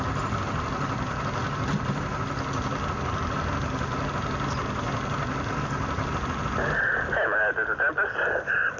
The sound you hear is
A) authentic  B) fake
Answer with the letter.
A